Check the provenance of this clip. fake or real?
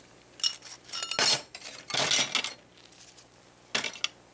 real